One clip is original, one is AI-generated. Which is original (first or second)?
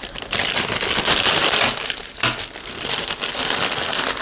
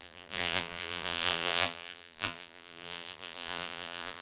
first